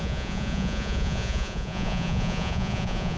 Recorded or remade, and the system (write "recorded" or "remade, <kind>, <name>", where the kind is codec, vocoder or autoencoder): remade, vocoder, Vocos